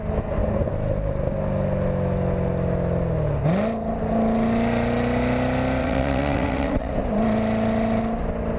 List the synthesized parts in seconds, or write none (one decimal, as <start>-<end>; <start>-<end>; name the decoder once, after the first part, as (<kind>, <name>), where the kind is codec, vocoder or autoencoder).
5.8-6.9 (vocoder, WaveNeXt)